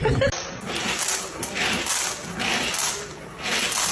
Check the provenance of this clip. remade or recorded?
recorded